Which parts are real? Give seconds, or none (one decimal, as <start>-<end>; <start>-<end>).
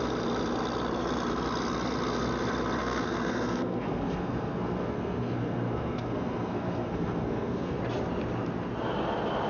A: 0.0-2.8; 7.8-9.5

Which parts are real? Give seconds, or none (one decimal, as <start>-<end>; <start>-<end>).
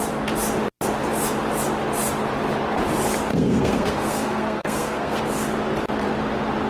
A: 0.0-3.3; 5.2-6.7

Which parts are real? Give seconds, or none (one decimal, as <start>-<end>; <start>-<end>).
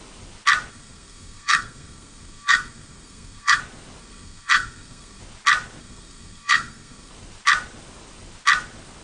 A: 0.0-0.7; 3.6-4.0; 5.2-5.8; 7.1-9.0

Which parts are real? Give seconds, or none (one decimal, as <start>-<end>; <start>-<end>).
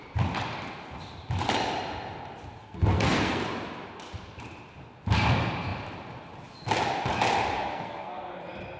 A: 0.0-2.6; 3.4-7.7; 8.3-8.8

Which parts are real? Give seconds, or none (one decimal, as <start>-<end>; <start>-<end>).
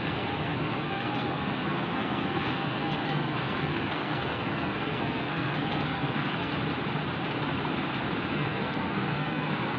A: 6.5-8.3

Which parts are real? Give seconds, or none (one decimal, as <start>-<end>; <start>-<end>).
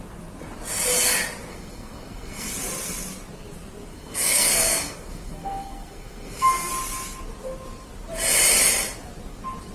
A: 0.0-1.5; 2.5-3.9; 6.7-9.7